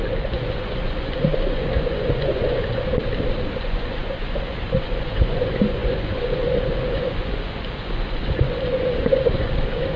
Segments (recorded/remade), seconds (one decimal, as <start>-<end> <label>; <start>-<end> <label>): 0.0-2.9 remade; 2.9-3.6 recorded; 3.6-10.0 remade